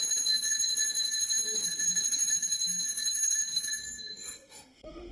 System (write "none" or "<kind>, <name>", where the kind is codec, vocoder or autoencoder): autoencoder, DAC-VAE